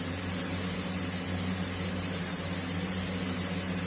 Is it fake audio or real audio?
real